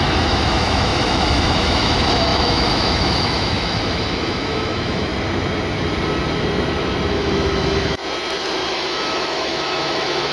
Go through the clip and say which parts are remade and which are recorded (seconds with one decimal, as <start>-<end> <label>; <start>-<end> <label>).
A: 0.0-5.1 remade; 5.1-7.1 recorded; 7.1-8.0 remade; 8.0-8.7 recorded; 8.7-10.3 remade